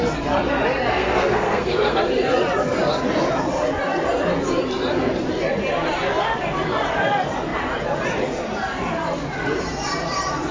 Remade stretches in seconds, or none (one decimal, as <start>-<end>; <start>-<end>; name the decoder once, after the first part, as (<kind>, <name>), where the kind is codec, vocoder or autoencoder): 0.9-2.0 (codec, SNAC)